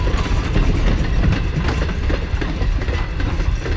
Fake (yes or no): yes